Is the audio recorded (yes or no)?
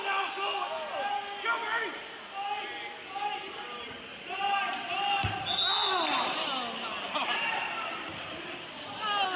yes